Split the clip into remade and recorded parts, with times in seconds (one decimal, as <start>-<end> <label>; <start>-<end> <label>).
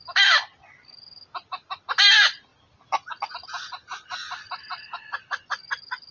0.0-6.1 recorded